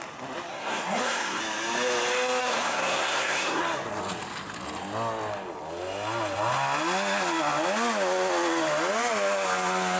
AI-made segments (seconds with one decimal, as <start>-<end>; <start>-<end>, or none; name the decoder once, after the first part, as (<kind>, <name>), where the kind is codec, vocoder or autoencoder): 0.5-1.4 (codec, SNAC); 2.4-3.6